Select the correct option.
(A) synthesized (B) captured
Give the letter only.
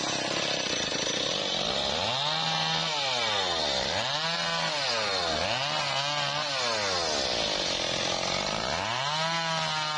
B